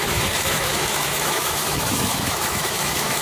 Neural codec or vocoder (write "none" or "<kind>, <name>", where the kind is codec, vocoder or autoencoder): autoencoder, DAC-VAE